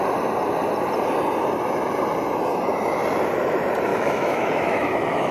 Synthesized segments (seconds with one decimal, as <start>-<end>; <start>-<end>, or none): 3.9-5.3